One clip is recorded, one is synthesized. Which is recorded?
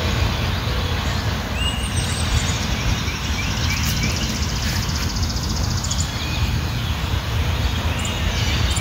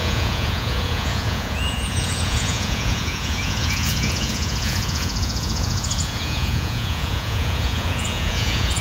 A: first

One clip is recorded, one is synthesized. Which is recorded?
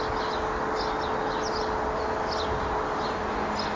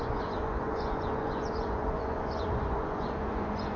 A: first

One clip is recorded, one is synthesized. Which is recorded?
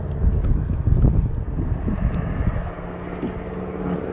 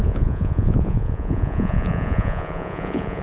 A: first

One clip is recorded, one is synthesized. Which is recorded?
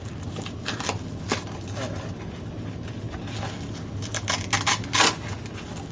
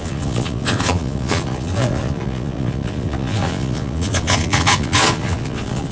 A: first